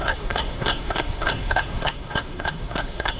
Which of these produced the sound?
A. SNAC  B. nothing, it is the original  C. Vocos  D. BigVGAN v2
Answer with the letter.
A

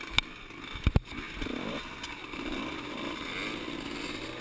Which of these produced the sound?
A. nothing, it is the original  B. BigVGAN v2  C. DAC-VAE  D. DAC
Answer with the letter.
A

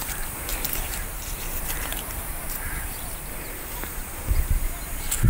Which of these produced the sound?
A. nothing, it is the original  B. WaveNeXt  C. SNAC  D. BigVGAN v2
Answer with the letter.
D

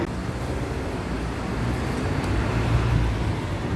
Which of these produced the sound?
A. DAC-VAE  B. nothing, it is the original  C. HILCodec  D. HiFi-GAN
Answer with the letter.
B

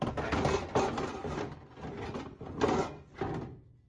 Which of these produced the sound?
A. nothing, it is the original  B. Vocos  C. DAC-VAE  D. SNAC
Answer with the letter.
A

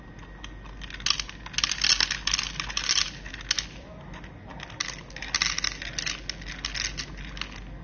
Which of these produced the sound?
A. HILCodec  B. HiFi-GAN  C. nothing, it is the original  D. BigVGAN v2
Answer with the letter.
C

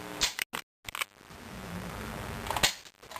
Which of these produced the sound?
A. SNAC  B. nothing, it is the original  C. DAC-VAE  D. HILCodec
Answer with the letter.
B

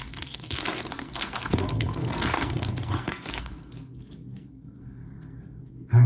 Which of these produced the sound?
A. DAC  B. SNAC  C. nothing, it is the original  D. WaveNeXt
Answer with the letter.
B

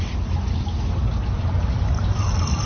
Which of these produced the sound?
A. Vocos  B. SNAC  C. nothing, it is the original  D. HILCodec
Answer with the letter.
C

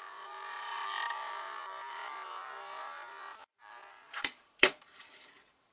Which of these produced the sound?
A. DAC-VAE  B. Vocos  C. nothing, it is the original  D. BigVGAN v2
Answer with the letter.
D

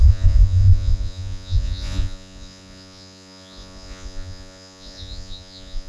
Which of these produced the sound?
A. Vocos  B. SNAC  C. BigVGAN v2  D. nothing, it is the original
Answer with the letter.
A